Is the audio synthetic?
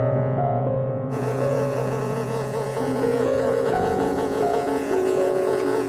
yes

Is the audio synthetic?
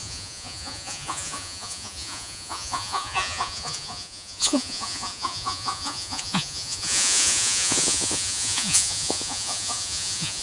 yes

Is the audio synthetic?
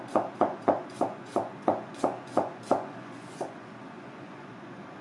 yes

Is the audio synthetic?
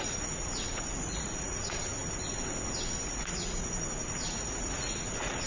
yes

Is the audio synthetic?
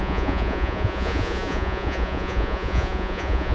yes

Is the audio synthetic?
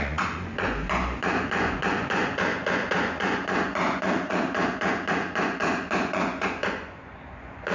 yes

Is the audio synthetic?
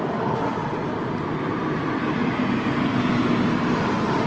no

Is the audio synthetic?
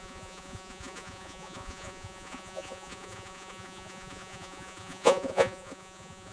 yes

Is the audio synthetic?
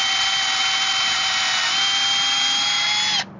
no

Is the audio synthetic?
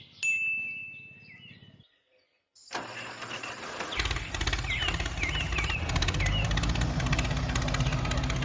no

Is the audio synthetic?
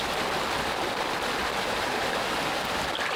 no